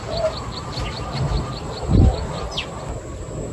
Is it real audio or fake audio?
real